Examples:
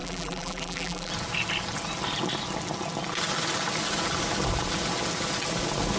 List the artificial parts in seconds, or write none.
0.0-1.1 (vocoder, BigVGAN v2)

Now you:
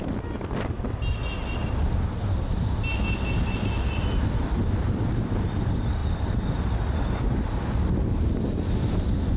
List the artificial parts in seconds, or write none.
none